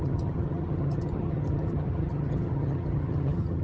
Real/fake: fake